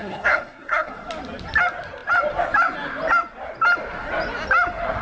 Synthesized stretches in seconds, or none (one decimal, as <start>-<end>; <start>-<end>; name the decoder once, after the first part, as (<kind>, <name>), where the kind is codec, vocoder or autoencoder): 0.0-0.9 (codec, SNAC)